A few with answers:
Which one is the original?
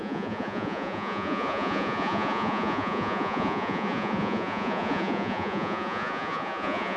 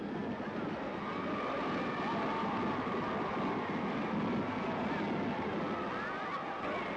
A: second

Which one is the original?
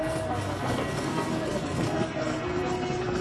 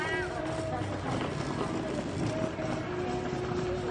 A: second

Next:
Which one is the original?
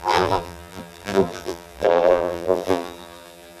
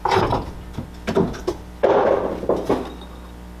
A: second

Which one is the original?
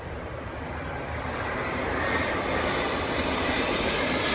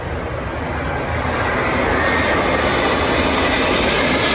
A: second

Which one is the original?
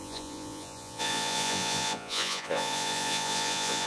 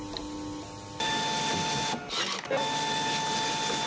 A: second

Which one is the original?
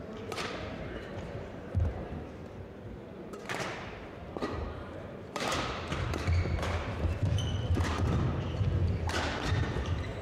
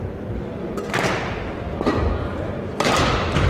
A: second